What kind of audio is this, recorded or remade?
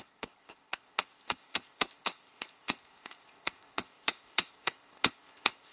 remade